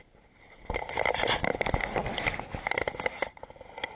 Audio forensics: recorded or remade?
recorded